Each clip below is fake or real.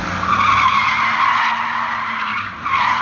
real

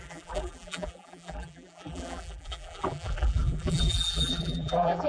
fake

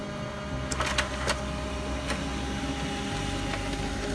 real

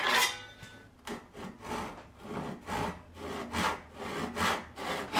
real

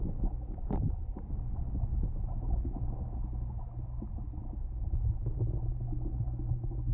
real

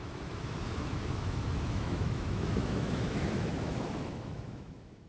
fake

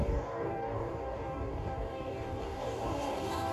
fake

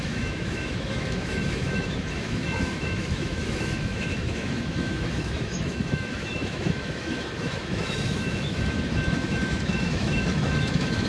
fake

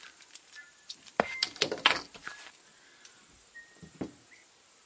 real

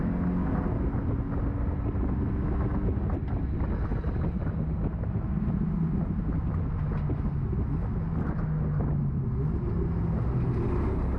real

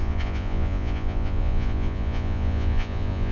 fake